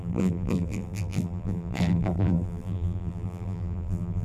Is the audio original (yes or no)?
no